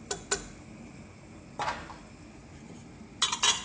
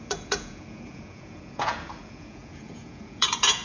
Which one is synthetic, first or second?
second